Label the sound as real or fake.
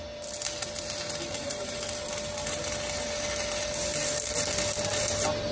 real